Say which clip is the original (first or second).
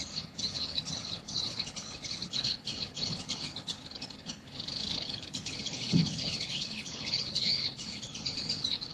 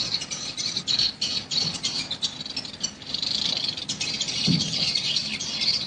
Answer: second